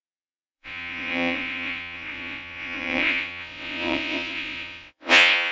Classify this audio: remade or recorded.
remade